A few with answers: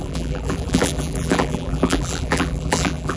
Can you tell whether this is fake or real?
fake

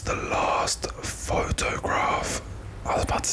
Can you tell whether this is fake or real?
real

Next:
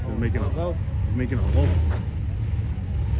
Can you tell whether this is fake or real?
real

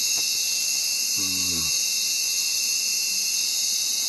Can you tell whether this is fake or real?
real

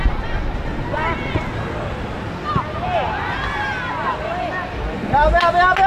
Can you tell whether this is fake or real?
real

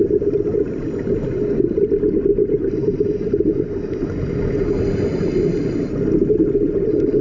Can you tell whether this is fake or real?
real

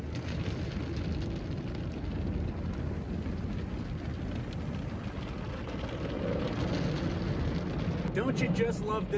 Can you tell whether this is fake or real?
real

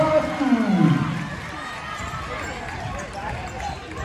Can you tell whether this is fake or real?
real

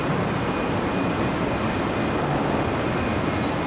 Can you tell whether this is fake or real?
real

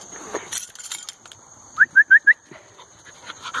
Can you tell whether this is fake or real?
real